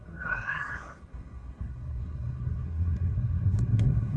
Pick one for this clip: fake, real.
fake